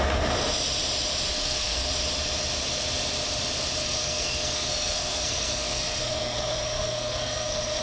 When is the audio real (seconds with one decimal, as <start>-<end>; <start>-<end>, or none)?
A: 0.0-1.3; 1.9-3.8